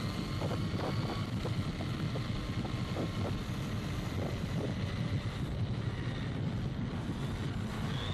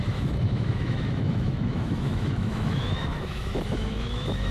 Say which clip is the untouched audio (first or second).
first